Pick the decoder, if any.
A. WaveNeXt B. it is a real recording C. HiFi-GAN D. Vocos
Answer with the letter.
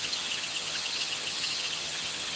C